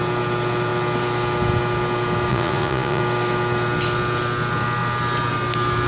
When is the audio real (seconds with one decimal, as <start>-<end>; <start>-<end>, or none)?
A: 0.0-2.3; 3.0-5.9